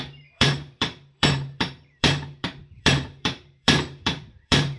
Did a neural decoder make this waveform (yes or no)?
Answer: yes